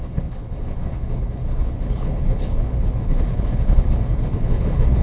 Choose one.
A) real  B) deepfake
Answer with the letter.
B